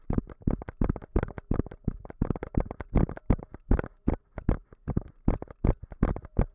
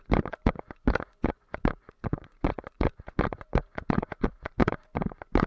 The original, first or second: first